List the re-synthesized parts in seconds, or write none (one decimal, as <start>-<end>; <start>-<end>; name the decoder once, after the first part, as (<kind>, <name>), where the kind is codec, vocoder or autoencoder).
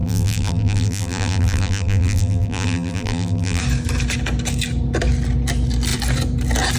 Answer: 0.0-3.6 (vocoder, BigVGAN v2)